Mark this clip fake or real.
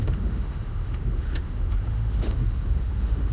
fake